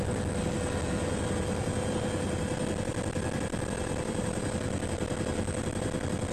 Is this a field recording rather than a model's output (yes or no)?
yes